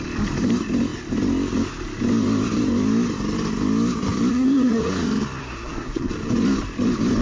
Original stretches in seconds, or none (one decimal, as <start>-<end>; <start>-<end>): 0.0-4.3; 4.9-5.4; 6.1-7.2